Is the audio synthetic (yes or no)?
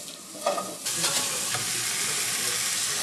no